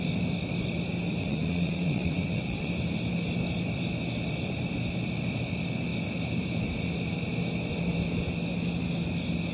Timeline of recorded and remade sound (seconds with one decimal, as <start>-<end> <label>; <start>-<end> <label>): 0.0-1.2 recorded; 1.2-2.7 remade; 2.7-9.5 recorded

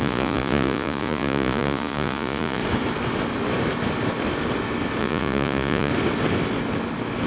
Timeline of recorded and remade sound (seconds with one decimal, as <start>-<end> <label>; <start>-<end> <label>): 0.0-2.6 remade; 2.6-5.0 recorded; 5.0-5.9 remade; 5.9-7.3 recorded

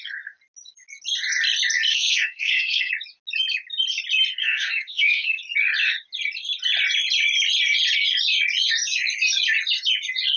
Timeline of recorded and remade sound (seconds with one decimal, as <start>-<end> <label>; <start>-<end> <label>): 0.0-1.9 recorded; 1.9-2.9 remade; 2.9-4.4 recorded; 4.4-5.4 remade; 5.4-10.4 recorded

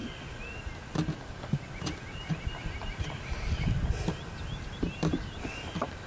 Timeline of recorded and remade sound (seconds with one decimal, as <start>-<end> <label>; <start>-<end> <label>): 0.0-1.7 recorded; 1.7-6.1 remade

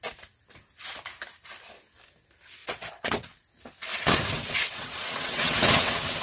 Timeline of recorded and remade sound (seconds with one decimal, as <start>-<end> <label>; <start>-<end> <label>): 0.0-2.6 recorded; 2.6-3.4 remade; 3.4-3.9 recorded; 3.9-6.2 remade

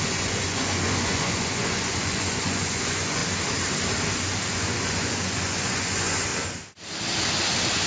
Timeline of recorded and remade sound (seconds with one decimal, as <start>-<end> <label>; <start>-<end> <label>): 0.0-3.2 remade; 3.2-4.5 recorded; 4.5-6.3 remade; 6.3-7.9 recorded

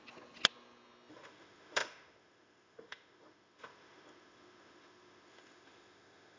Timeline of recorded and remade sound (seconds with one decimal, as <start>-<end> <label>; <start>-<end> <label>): 0.0-1.1 recorded; 1.1-6.4 remade

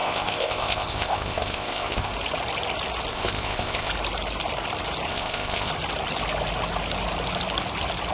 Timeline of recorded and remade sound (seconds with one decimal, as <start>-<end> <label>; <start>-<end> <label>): 0.0-2.1 remade; 2.1-3.1 recorded; 3.1-3.9 remade; 3.9-5.1 recorded; 5.1-5.7 remade; 5.7-8.1 recorded